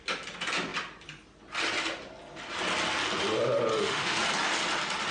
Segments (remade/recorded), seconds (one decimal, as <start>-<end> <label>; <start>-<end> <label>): 0.0-3.7 recorded; 3.7-4.2 remade; 4.2-5.1 recorded